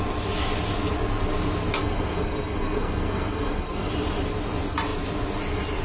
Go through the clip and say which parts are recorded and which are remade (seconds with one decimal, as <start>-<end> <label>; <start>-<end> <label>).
0.0-1.8 recorded; 1.8-3.9 remade; 3.9-5.8 recorded